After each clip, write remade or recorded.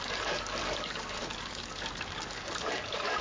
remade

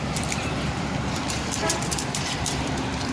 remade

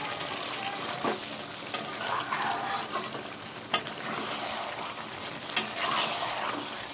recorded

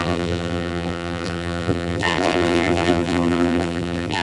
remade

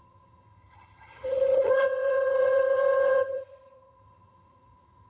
remade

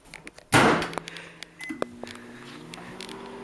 recorded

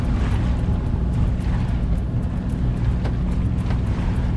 recorded